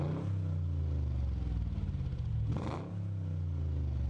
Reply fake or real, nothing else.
real